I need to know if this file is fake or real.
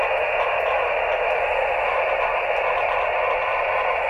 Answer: real